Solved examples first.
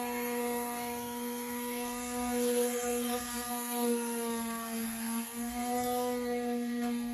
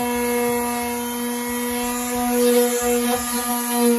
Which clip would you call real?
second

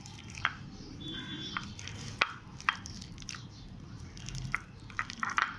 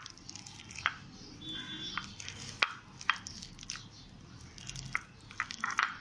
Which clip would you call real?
second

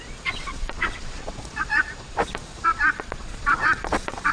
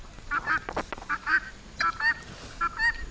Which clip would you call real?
second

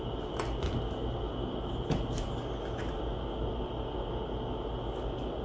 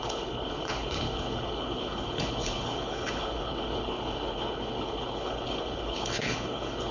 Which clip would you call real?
first